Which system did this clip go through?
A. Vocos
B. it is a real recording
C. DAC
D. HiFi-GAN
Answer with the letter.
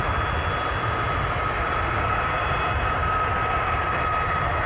B